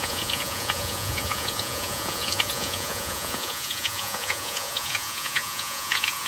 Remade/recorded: remade